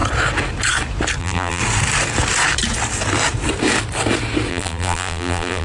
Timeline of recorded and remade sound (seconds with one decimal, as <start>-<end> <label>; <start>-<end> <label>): 0.0-1.2 recorded; 1.2-1.6 remade; 1.6-4.5 recorded; 4.5-5.6 remade